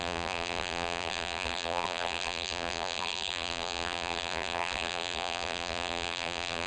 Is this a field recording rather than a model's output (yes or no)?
no